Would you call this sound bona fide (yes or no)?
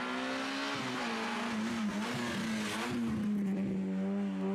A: yes